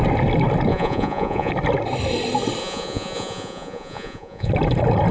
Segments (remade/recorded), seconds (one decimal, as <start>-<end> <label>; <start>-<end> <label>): 0.0-0.7 recorded; 0.7-1.5 remade; 1.5-2.6 recorded; 2.6-4.5 remade; 4.5-5.1 recorded